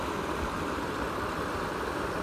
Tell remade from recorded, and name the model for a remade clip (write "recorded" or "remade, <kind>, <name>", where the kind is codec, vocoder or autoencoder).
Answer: recorded